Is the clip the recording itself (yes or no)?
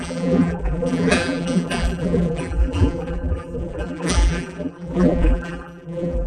no